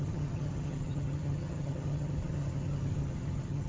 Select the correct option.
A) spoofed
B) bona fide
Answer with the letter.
A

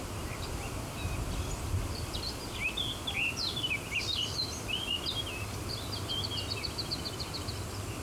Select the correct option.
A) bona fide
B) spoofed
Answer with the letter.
A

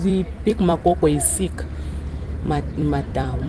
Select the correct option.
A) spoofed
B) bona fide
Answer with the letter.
A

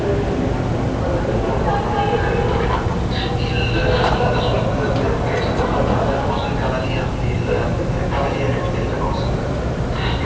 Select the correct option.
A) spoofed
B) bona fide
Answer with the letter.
B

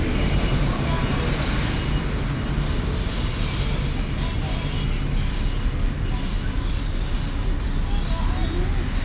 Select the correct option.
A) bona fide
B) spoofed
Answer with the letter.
A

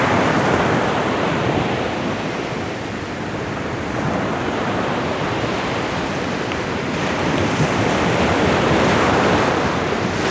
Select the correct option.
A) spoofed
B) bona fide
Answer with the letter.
B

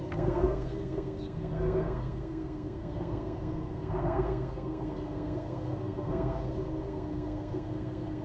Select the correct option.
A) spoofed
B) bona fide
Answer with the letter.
A